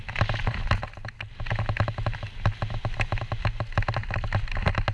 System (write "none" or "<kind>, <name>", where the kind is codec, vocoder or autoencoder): none